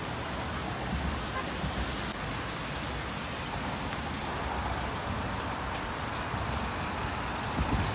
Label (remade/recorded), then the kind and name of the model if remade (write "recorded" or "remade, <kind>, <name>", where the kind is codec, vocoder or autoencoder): recorded